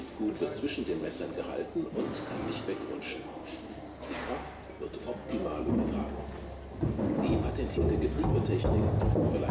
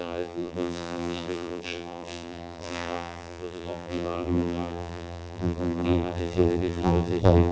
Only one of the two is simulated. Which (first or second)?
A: second